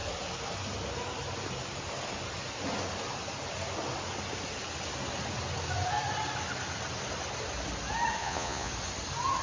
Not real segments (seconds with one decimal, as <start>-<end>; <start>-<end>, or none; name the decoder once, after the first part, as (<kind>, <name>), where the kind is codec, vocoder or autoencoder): 8.2-8.7 (vocoder, Vocos)